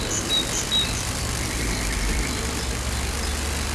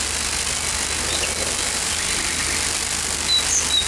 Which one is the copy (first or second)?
first